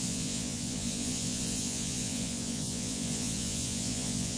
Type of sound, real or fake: fake